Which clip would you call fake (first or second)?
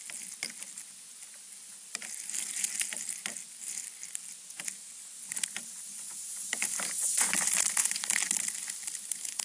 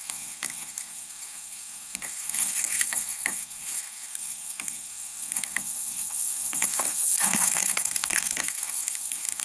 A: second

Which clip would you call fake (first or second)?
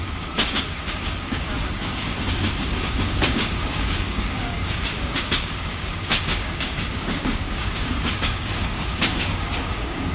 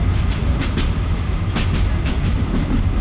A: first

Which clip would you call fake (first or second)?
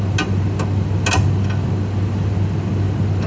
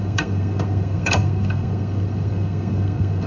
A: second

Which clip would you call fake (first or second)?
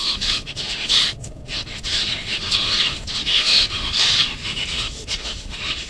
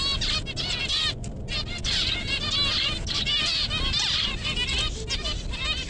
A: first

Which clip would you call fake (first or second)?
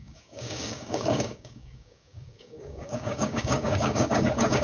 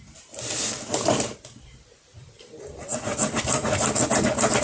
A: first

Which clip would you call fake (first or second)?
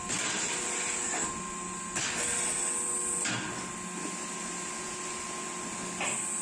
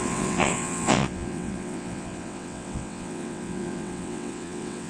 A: second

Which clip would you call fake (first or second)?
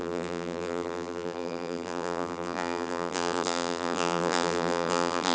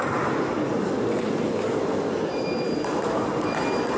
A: first